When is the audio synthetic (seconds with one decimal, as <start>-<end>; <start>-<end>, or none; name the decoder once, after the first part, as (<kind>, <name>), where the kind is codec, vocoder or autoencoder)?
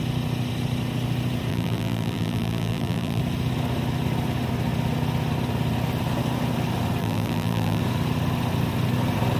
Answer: 1.5-3.2 (vocoder, BigVGAN v2); 7.0-7.8